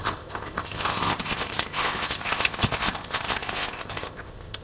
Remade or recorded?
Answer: remade